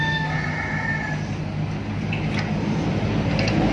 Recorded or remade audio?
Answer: recorded